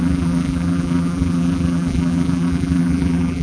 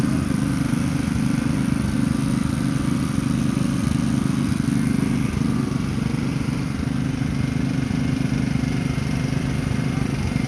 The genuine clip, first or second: second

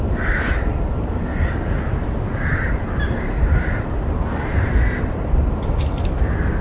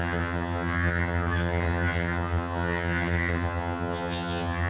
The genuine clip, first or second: first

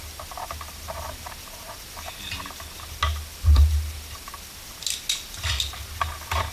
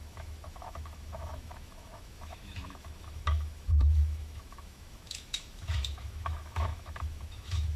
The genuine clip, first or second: first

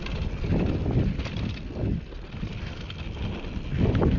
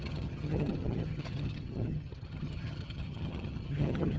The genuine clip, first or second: first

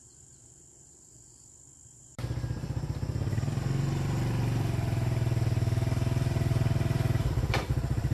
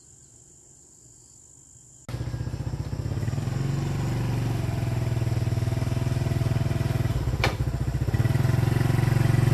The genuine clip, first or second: second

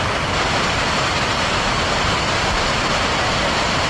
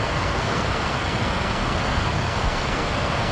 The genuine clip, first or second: first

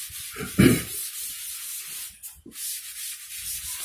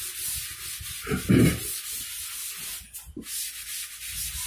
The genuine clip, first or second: second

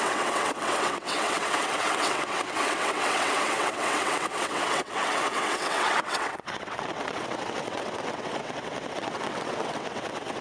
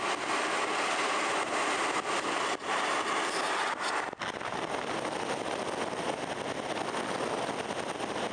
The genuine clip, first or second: second